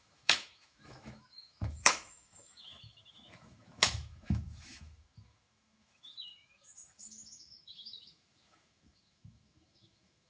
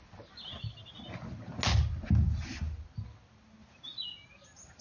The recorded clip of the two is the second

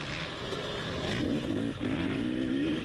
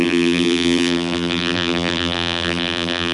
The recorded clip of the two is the first